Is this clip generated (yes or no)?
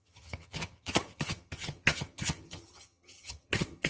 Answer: yes